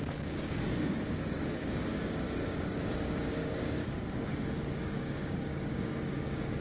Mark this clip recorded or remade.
remade